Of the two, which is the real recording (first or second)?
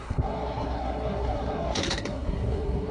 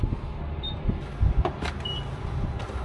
second